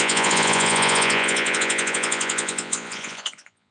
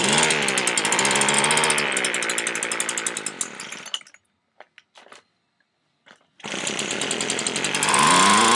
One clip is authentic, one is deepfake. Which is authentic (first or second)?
second